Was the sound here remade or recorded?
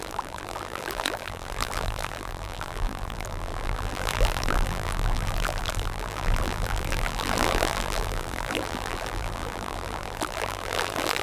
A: remade